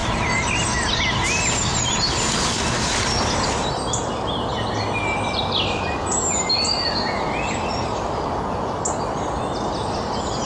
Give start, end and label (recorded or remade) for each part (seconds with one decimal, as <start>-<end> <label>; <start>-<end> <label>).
0.0-10.5 recorded